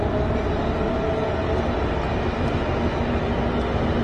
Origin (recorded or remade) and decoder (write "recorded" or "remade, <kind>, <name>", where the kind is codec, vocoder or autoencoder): recorded